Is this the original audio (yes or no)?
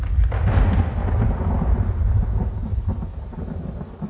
yes